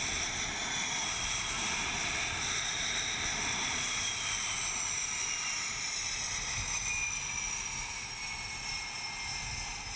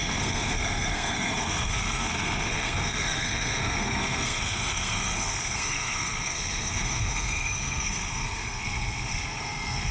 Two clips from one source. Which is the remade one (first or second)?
second